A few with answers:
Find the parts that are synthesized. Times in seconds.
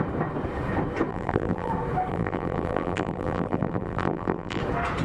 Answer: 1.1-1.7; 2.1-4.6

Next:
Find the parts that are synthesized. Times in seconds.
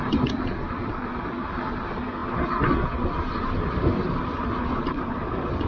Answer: none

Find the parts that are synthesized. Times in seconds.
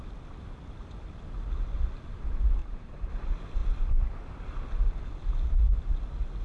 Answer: 2.6-3.1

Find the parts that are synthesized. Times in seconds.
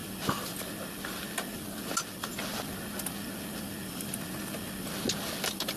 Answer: none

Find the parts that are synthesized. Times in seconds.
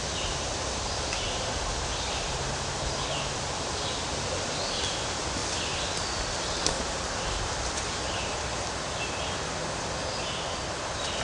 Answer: 0.0-5.4; 6.2-11.2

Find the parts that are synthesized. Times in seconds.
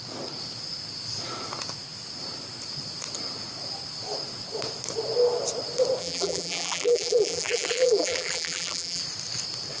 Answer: 6.0-9.0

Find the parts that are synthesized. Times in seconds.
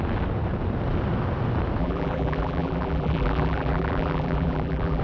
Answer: 1.8-5.0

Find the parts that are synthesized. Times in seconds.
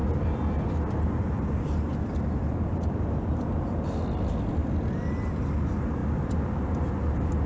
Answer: 0.0-3.7; 6.0-6.6